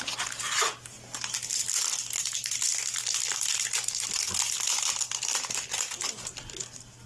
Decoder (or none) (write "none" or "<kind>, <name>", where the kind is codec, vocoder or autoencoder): none